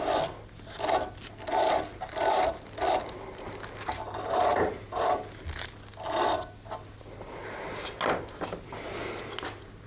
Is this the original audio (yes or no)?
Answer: yes